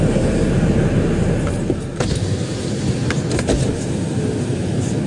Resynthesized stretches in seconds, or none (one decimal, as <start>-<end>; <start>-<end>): none